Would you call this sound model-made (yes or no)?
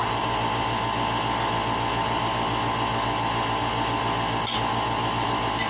no